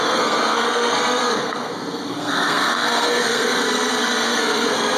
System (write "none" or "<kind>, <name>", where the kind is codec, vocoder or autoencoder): codec, SNAC